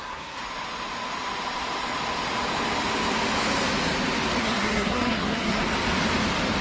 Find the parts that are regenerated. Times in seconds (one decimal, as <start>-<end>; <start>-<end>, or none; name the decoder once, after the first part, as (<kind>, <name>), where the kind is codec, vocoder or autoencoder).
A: 0.0-0.4 (codec, SNAC); 4.4-5.6